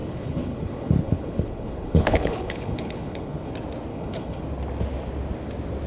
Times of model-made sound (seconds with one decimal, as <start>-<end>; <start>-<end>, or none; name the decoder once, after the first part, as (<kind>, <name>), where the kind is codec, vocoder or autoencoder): 0.0-3.5 (codec, HILCodec); 3.9-4.4